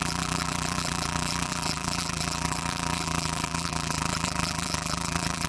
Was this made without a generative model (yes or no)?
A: no